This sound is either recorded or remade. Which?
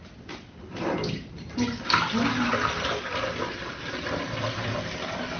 recorded